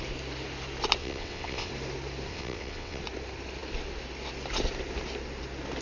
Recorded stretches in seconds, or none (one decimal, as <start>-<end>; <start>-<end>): 0.0-1.0; 1.7-2.3; 3.0-5.8